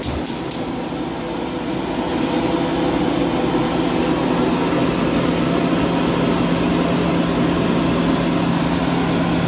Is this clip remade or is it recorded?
recorded